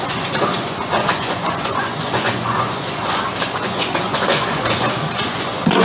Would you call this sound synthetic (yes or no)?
yes